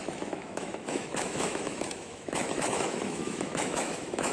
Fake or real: fake